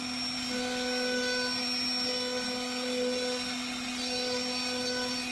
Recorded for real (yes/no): yes